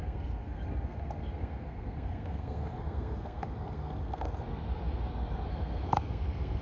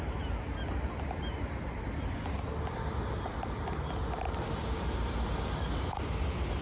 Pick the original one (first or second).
second